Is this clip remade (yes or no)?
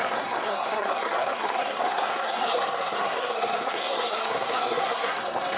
yes